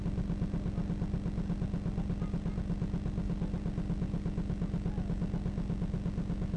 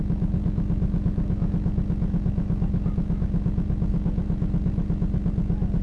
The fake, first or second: second